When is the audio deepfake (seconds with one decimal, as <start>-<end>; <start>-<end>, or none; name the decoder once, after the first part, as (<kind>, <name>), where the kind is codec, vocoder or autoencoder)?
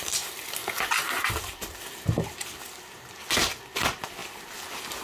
none